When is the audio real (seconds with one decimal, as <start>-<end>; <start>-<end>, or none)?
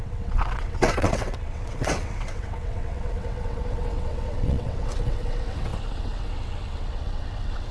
none